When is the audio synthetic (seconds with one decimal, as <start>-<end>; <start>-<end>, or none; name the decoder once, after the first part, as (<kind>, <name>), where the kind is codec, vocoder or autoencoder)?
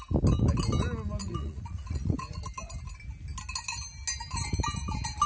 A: 1.2-2.4 (vocoder, Vocos)